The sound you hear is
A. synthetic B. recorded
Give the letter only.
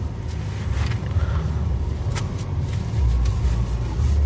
B